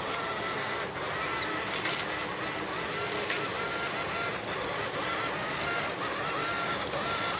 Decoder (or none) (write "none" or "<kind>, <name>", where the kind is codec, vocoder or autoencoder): none